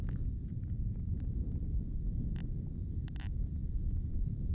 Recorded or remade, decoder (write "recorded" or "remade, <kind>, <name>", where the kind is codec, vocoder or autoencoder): recorded